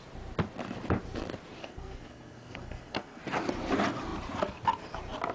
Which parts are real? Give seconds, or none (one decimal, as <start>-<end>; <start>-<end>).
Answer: 0.0-1.6; 3.2-5.3

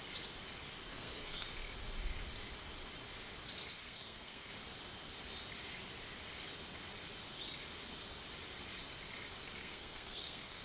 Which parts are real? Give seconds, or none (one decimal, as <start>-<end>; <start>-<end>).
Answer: 0.0-0.9; 1.5-3.7; 4.5-9.6

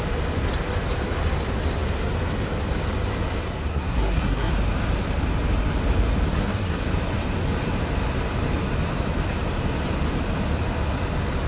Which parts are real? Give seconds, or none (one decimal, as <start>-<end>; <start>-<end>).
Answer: 0.0-3.7; 4.5-6.3; 6.8-11.5

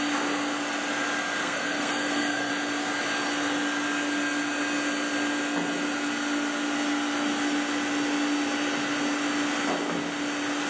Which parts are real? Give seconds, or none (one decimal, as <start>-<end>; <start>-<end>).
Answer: 0.0-1.4; 2.5-10.7

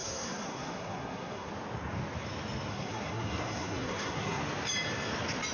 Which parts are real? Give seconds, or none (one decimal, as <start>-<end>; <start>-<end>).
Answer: 1.5-2.7; 4.4-5.5

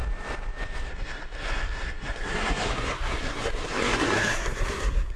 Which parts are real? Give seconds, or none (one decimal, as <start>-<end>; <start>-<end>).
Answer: 0.0-0.9

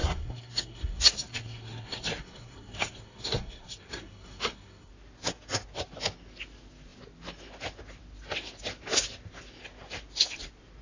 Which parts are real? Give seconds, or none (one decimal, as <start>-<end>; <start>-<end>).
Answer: 4.9-10.8

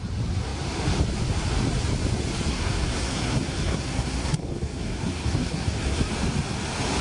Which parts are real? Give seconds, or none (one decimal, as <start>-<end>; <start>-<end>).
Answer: 0.0-2.5; 6.1-7.0